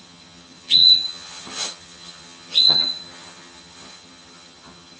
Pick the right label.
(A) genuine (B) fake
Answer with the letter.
B